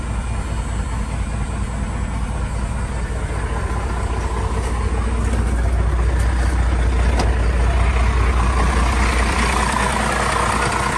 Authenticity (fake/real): real